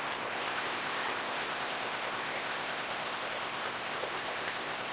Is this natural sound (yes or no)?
no